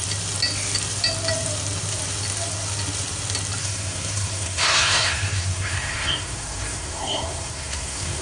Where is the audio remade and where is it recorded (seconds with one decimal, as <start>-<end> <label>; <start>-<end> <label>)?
0.0-3.6 recorded; 3.6-8.2 remade